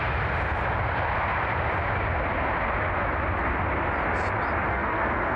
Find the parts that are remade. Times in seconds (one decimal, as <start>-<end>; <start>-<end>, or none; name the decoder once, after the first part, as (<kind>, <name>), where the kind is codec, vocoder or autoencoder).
4.7-5.4 (codec, SNAC)